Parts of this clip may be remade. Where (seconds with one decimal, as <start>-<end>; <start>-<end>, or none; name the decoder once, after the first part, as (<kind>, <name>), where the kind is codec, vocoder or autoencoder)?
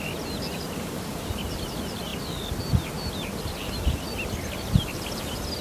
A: none